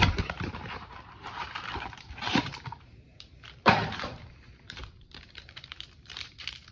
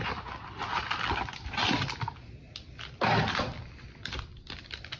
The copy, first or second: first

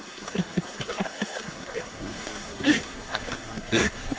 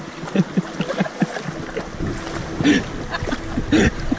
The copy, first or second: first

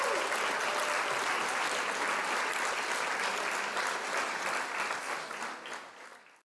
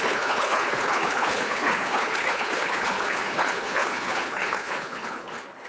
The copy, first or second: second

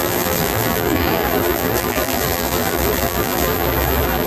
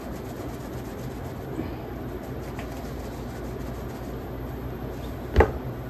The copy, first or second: first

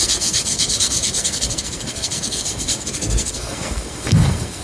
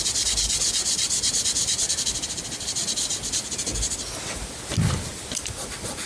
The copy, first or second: first